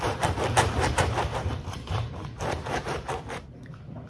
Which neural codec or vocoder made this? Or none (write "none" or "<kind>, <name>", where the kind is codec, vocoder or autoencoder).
vocoder, BigVGAN v2